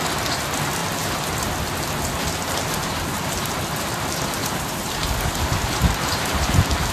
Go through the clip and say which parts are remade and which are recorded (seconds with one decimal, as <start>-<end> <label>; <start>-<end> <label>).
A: 0.0-4.4 recorded; 4.4-6.9 remade